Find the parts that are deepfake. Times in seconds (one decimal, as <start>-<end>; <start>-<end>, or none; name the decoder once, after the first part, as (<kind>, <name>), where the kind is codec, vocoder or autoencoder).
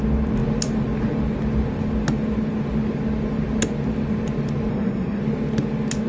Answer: 4.7-5.2 (codec, SNAC)